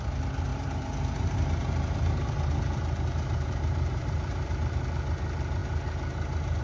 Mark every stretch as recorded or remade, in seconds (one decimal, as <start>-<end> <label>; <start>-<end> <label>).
0.0-0.5 recorded; 0.5-4.5 remade; 4.5-6.6 recorded